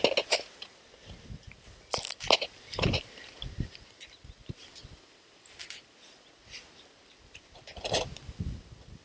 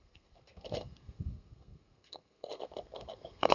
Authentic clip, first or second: first